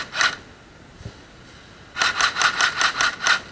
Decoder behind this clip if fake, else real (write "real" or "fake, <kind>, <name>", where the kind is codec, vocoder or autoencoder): real